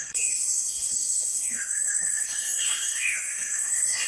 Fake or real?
fake